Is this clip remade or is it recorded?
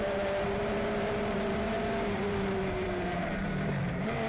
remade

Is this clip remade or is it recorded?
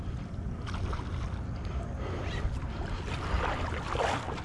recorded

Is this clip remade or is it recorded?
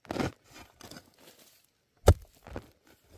recorded